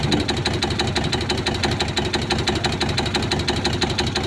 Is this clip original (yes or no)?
yes